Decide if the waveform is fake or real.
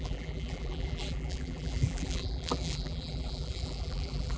fake